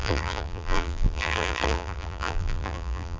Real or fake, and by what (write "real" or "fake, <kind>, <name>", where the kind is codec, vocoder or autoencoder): fake, vocoder, BigVGAN v2